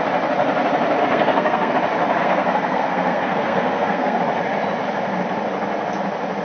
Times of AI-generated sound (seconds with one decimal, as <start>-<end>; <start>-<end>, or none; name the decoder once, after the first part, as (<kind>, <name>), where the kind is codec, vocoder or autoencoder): 1.0-1.7 (codec, SNAC); 2.2-4.2